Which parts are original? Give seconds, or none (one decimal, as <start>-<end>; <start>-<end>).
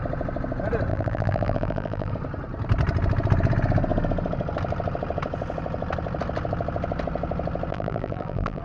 0.0-0.9; 2.1-7.7